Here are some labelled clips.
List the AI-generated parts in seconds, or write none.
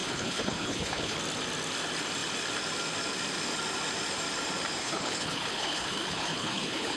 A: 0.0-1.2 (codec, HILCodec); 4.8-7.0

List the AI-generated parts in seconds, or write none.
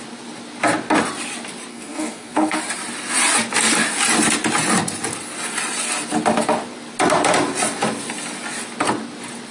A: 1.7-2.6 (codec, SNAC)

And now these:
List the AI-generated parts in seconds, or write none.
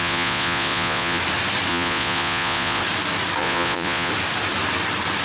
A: 0.0-1.2 (vocoder, Vocos); 1.7-2.8; 3.4-4.1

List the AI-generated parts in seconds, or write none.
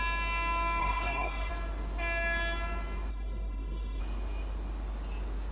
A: 0.8-1.5 (codec, SNAC); 3.1-4.0